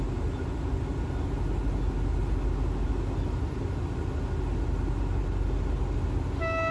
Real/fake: real